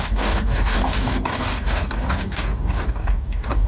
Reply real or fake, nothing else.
fake